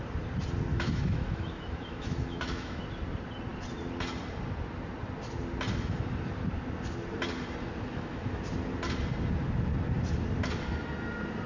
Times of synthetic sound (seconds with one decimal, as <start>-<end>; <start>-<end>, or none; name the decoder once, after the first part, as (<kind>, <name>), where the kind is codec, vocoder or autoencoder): 0.7-2.8 (autoencoder, DAC-VAE); 7.9-8.4